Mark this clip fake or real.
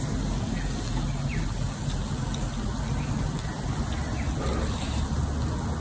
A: real